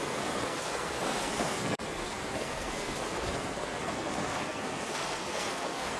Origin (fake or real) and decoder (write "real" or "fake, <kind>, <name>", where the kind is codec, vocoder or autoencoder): fake, codec, SNAC